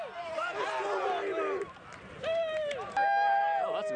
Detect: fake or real real